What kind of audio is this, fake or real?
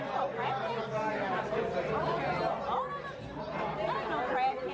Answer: real